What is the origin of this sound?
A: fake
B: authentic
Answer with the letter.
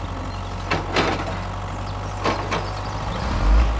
B